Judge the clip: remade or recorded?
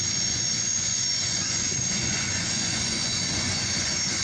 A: remade